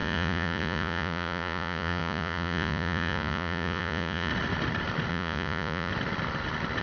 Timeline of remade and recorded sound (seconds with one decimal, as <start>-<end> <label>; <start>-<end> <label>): 0.0-4.3 remade; 4.3-5.1 recorded; 5.1-5.9 remade; 5.9-6.8 recorded